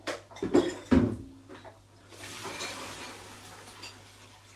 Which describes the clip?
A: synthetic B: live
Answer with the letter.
B